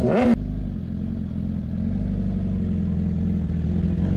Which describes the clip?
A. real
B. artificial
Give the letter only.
A